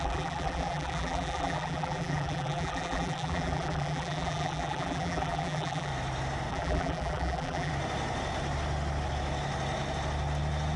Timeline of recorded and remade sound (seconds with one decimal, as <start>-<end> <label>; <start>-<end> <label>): 0.0-5.9 remade; 5.9-6.5 recorded; 6.5-7.7 remade; 7.7-10.8 recorded